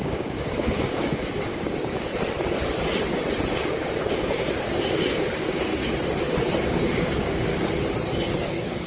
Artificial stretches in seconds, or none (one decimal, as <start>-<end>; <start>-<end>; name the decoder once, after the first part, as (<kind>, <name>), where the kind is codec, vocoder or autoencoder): 0.0-2.1 (codec, DAC); 3.5-5.7; 6.6-7.5; 8.5-8.9